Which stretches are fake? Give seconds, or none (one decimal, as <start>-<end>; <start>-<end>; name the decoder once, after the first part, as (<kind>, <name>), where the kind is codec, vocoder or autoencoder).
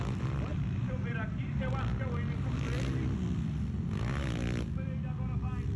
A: none